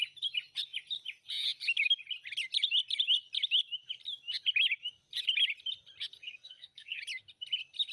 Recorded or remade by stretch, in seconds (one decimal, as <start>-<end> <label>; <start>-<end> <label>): 0.0-6.2 recorded; 6.2-7.0 remade; 7.0-7.9 recorded